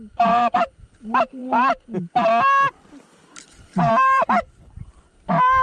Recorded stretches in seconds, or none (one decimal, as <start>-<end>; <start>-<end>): 1.4-3.9